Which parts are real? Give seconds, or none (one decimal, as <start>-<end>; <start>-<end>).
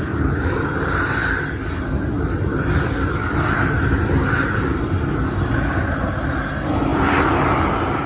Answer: 0.0-8.1